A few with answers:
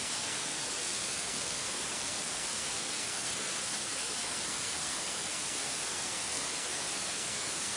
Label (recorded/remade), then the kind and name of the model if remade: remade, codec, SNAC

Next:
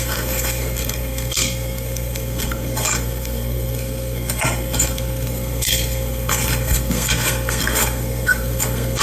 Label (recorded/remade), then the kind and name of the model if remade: remade, codec, SNAC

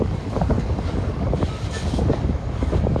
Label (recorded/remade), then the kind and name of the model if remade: remade, codec, DAC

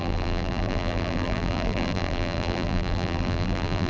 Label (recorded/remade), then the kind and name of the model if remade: remade, vocoder, BigVGAN v2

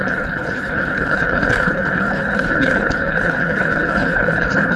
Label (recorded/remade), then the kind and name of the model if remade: remade, codec, HILCodec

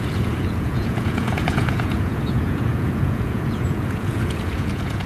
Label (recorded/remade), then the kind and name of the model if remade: remade, vocoder, Vocos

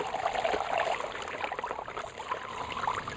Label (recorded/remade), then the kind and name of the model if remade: recorded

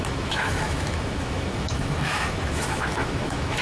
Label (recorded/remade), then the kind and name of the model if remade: remade, autoencoder, DAC-VAE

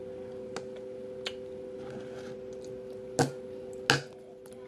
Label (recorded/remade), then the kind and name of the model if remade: recorded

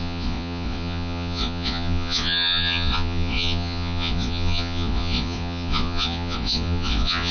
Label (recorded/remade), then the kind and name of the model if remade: remade, vocoder, Vocos